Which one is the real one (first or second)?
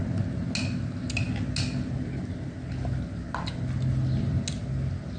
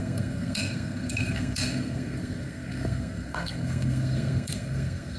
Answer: first